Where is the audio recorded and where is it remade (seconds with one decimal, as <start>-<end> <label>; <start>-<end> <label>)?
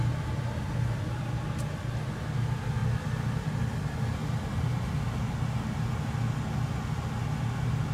0.0-7.9 recorded